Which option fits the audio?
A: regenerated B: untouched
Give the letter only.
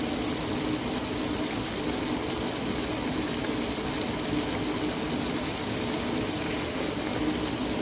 B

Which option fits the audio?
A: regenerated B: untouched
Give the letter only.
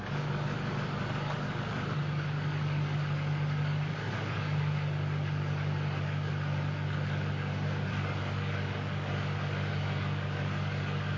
A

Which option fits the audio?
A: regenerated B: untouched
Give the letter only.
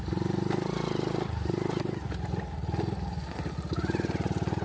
B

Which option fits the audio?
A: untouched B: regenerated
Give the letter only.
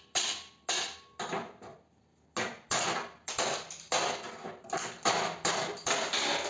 A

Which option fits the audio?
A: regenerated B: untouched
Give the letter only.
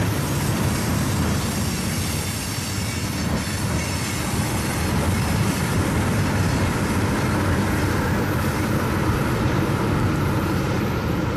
B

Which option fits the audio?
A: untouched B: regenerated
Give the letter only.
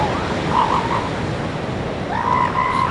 A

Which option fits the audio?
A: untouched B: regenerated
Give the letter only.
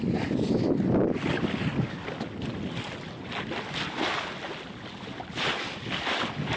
A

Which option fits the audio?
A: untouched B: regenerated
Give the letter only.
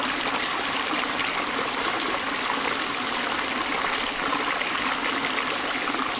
A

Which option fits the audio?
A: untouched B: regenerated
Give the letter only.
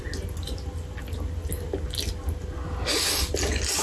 A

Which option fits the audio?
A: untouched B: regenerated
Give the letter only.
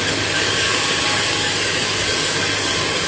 B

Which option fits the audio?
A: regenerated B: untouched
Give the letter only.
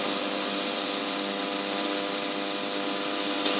B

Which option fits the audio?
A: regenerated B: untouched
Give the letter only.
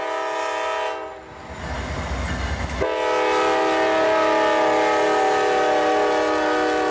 B